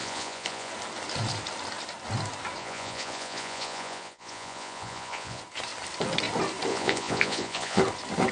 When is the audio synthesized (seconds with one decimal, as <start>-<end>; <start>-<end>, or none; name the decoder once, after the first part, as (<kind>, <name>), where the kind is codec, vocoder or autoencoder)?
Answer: 0.0-0.7 (vocoder, Vocos); 2.6-5.4; 6.7-7.8